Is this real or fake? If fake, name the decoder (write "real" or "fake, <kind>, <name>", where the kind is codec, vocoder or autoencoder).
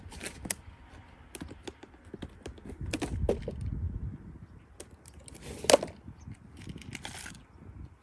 real